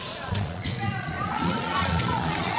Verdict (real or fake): fake